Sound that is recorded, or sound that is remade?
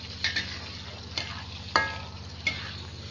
recorded